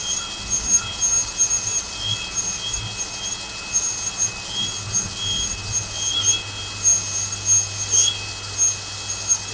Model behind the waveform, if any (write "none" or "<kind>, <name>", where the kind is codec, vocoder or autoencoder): none